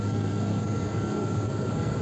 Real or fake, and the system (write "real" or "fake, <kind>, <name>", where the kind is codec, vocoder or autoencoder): fake, codec, SNAC